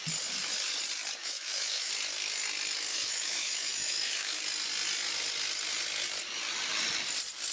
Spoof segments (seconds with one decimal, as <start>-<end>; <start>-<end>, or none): 1.2-1.9; 2.9-4.4